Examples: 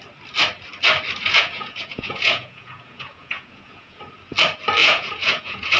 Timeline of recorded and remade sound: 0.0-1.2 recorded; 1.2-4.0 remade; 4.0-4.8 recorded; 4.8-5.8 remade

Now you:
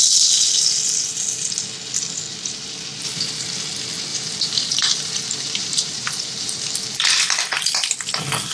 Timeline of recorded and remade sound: 0.0-2.3 recorded; 2.3-3.2 remade; 3.2-4.1 recorded; 4.1-6.7 remade; 6.7-8.5 recorded

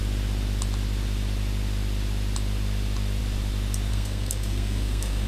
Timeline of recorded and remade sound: 0.0-3.9 recorded; 3.9-5.3 remade

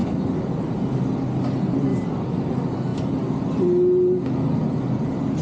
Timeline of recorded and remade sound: 0.0-5.4 recorded